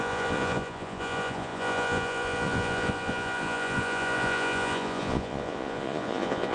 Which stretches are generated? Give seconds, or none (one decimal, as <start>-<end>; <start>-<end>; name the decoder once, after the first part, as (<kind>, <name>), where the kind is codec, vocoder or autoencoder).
0.0-6.5 (vocoder, Vocos)